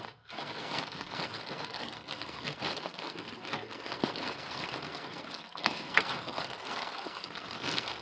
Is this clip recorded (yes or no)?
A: no